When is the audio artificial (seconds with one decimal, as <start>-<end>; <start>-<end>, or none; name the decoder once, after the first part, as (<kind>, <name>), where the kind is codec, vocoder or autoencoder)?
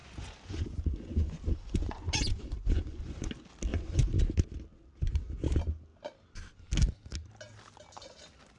0.0-3.3 (vocoder, Vocos); 3.7-4.2